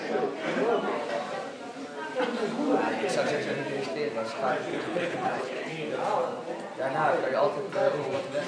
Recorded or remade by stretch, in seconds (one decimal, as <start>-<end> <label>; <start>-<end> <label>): 0.0-4.7 recorded; 4.7-5.7 remade; 5.7-8.5 recorded